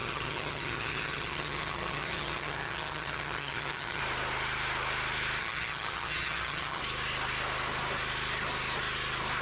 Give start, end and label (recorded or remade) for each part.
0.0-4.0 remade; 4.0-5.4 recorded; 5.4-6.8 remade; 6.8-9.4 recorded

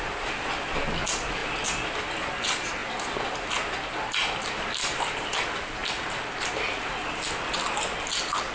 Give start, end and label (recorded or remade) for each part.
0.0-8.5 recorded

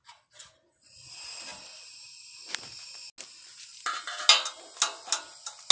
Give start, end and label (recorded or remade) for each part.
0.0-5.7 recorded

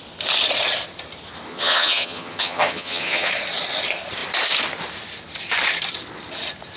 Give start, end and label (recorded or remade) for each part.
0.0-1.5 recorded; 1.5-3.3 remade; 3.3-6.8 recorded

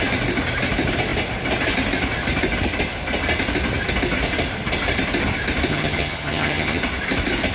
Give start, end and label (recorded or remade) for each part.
0.0-5.7 recorded; 5.7-6.8 remade; 6.8-7.5 recorded

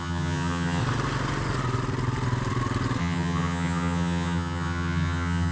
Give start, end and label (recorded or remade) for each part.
0.0-0.8 remade; 0.8-3.0 recorded; 3.0-5.5 remade